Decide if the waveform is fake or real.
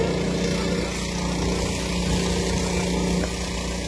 real